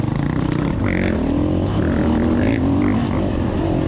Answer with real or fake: real